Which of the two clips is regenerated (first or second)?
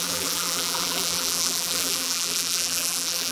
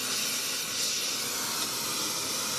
first